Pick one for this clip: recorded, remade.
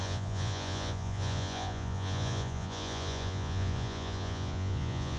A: remade